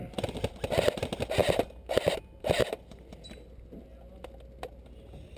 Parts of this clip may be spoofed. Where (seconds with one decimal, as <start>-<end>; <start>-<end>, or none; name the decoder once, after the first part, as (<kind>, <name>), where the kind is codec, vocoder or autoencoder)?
2.6-3.3 (vocoder, BigVGAN v2)